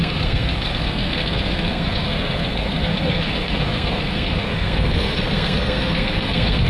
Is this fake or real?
fake